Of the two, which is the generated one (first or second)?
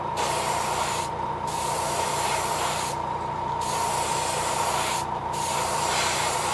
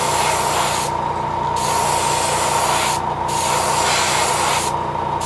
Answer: first